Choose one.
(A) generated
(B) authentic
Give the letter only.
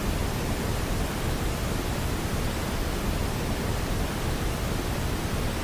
B